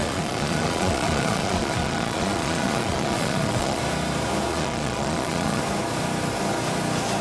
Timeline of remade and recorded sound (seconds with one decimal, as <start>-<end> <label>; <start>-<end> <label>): 0.0-3.8 remade; 3.8-4.5 recorded; 4.5-5.6 remade; 5.6-7.2 recorded